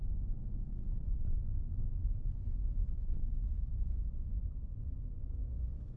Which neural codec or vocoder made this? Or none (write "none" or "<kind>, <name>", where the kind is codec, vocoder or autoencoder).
vocoder, Vocos